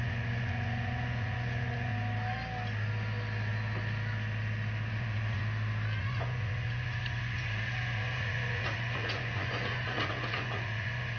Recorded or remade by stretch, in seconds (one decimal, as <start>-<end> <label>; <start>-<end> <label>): 0.0-1.9 remade; 1.9-4.9 recorded; 4.9-5.4 remade; 5.4-6.0 recorded; 6.0-11.2 remade